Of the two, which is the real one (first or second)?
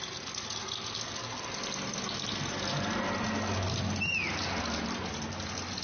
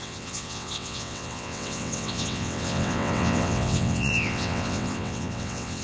first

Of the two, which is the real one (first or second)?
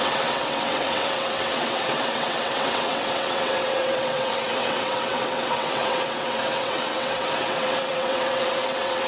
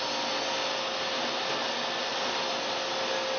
second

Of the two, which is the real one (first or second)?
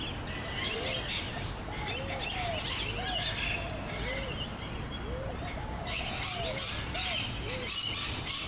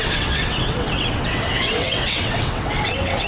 first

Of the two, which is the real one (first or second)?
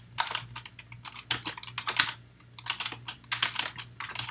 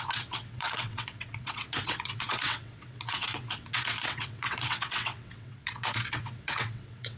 first